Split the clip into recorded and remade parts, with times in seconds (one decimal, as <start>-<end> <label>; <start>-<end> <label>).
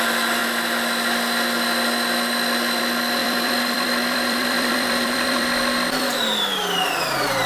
0.0-3.2 recorded; 3.2-6.2 remade; 6.2-7.5 recorded